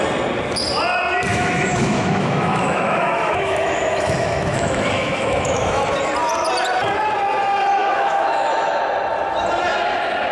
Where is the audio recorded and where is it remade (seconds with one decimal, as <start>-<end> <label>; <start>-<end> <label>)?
0.0-1.3 recorded; 1.3-5.8 remade; 5.8-7.8 recorded; 7.8-8.8 remade; 8.8-10.3 recorded